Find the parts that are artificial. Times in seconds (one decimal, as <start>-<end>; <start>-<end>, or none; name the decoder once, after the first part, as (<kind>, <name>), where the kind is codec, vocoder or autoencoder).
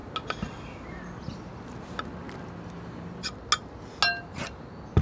none